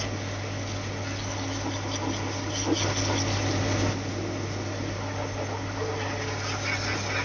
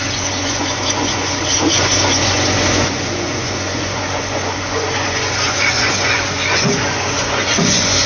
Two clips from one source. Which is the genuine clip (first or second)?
first